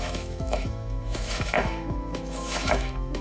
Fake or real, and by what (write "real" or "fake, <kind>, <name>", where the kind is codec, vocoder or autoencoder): fake, autoencoder, DAC-VAE